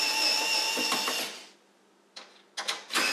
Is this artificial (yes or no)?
no